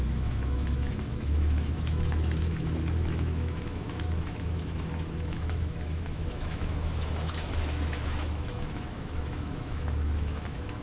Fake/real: fake